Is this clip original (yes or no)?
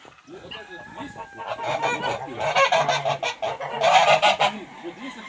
yes